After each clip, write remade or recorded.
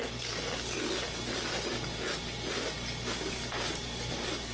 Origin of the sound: recorded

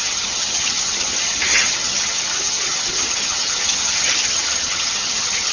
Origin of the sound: remade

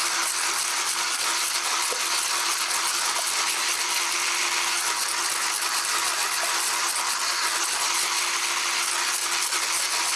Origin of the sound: recorded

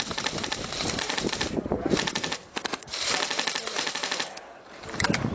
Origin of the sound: remade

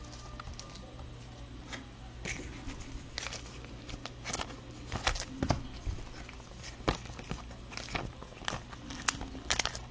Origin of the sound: recorded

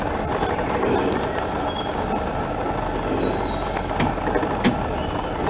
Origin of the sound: recorded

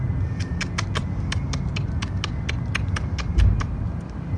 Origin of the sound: recorded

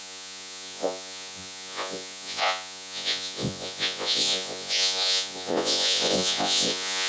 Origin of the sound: remade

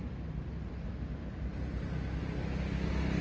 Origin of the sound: recorded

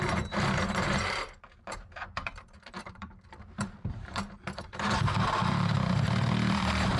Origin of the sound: remade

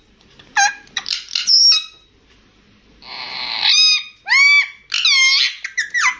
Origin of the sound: recorded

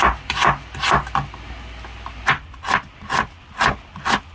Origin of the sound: recorded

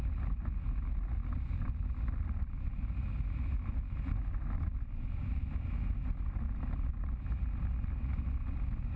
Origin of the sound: recorded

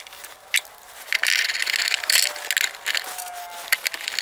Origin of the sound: recorded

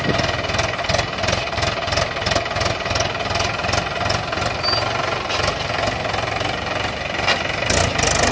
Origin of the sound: recorded